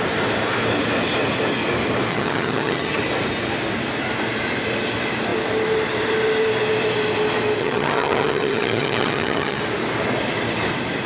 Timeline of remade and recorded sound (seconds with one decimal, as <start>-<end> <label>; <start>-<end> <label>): 0.0-2.1 recorded; 2.1-3.0 remade; 3.0-7.6 recorded; 7.6-9.6 remade; 9.6-11.1 recorded